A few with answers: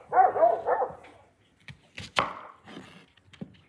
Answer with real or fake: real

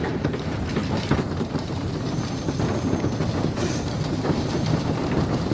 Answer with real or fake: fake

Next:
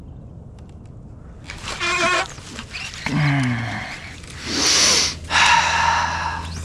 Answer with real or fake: real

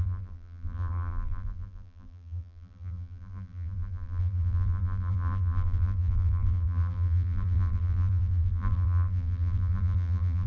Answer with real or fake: fake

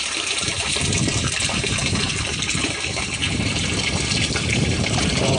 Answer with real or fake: fake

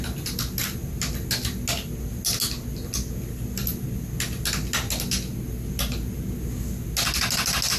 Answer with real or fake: real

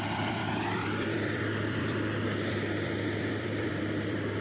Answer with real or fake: fake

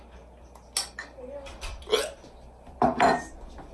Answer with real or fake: real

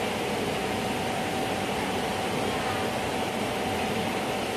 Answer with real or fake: fake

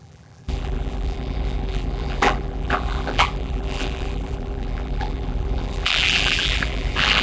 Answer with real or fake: fake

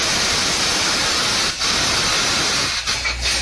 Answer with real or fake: real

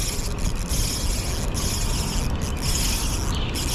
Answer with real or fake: real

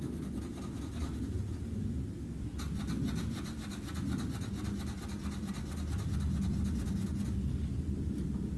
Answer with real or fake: real